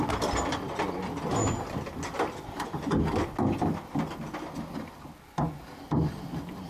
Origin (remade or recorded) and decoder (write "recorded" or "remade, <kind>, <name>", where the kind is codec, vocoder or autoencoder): recorded